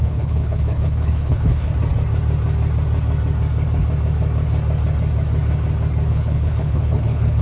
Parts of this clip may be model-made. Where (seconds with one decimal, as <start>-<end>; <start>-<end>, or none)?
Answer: 0.0-1.7; 6.1-7.4